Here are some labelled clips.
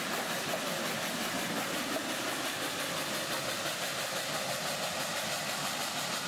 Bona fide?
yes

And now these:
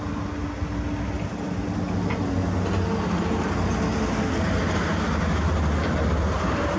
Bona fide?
yes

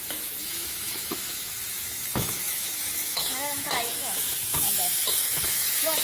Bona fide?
no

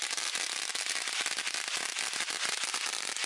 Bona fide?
yes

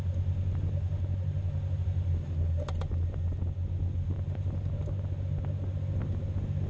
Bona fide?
yes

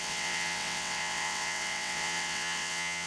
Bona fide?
no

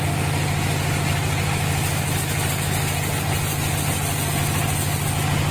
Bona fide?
yes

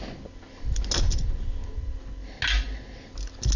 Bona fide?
yes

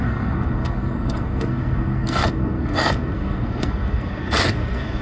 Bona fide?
no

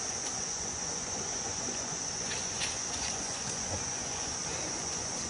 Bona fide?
no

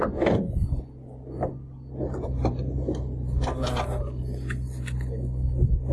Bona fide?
yes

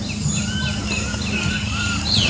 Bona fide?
yes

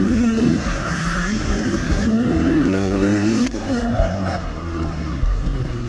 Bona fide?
no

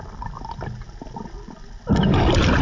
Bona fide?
yes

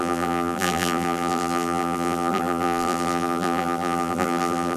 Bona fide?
no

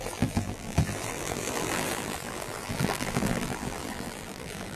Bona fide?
no